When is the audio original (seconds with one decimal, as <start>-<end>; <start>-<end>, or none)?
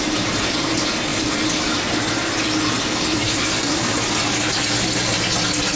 0.0-5.8